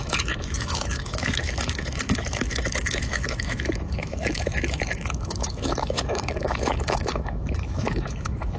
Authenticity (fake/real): fake